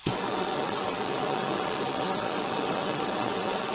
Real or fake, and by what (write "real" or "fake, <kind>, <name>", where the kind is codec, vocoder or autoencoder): fake, vocoder, WaveNeXt